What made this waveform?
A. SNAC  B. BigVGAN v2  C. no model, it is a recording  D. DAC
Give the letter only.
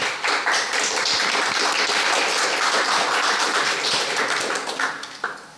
C